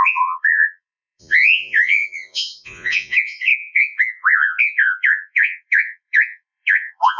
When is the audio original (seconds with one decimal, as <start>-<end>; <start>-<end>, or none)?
none